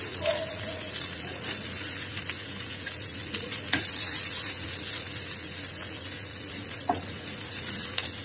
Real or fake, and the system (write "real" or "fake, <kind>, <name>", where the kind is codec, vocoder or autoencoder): fake, vocoder, Vocos